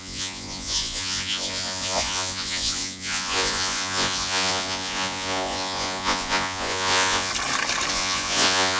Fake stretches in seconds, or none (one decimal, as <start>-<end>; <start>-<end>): 0.0-7.3; 7.9-8.8